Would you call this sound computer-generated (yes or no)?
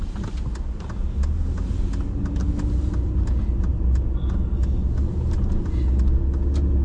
no